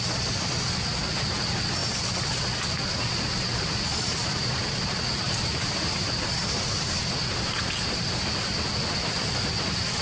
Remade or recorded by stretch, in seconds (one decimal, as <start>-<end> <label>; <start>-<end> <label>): 0.0-3.5 recorded; 3.5-8.2 remade; 8.2-10.0 recorded